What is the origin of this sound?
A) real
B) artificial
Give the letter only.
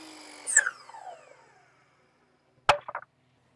A